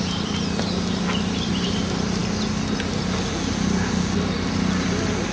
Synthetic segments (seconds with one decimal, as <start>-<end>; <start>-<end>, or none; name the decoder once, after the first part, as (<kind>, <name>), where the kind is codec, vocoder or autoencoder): none